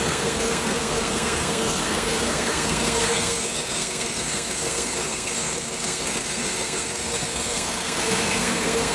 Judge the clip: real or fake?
fake